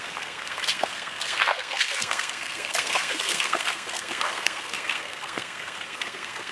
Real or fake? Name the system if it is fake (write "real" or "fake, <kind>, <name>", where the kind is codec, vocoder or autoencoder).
fake, codec, SNAC